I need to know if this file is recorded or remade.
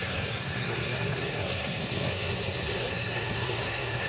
remade